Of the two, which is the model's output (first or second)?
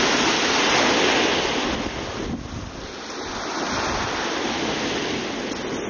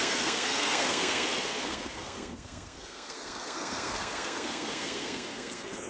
second